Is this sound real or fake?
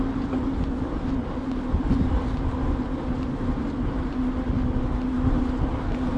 real